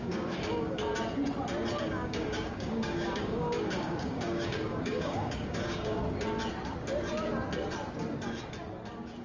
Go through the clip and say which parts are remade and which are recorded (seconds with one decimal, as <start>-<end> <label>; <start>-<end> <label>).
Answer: 0.0-0.9 remade; 0.9-1.8 recorded; 1.8-6.0 remade; 6.0-9.2 recorded